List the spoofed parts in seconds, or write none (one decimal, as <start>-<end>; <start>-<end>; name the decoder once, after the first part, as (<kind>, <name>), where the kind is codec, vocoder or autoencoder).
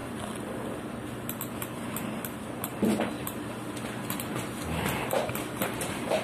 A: none